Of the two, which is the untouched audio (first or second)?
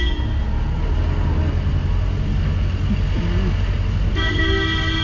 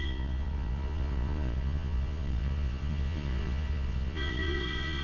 first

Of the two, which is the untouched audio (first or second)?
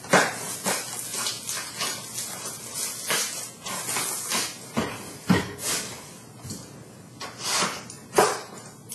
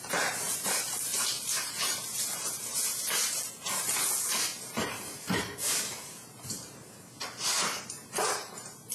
first